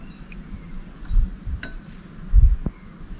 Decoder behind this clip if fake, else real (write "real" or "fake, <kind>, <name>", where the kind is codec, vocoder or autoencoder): real